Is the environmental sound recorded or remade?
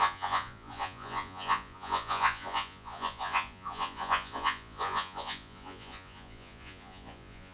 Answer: remade